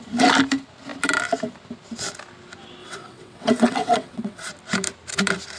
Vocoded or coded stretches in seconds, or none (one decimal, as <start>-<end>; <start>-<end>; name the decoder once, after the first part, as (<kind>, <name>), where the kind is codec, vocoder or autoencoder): 2.8-4.5 (vocoder, WaveNeXt)